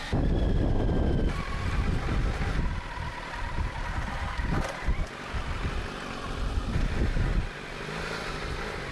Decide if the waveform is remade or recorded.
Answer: recorded